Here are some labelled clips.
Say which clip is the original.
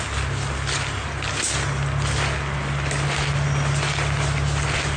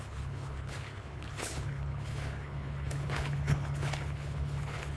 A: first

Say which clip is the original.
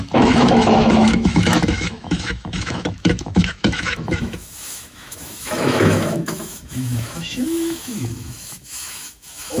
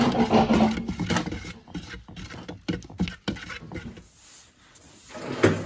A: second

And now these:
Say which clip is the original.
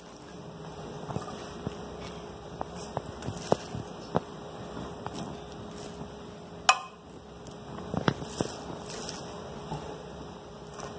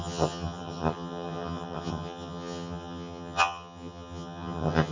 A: first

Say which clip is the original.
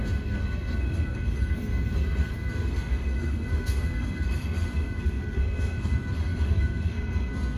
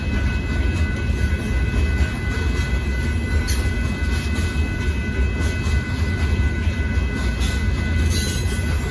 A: second